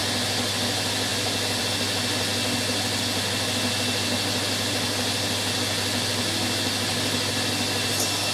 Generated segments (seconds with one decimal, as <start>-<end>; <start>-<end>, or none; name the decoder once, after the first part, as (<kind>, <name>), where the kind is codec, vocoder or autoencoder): none